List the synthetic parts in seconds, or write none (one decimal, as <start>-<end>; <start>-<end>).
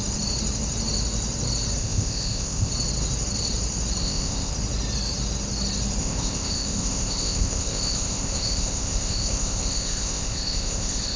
1.8-2.7; 4.0-4.5; 6.0-11.2